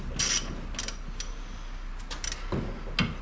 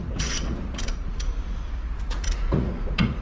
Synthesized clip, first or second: second